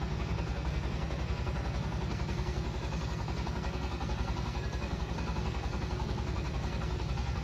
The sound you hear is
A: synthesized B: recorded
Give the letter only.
A